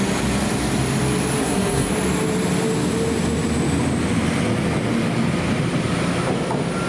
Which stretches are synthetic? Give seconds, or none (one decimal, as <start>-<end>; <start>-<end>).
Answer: 1.4-1.9